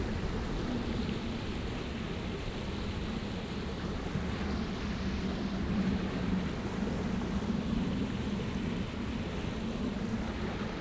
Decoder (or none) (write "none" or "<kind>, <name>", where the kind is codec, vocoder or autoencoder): none